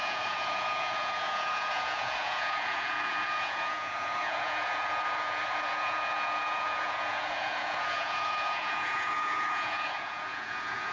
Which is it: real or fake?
fake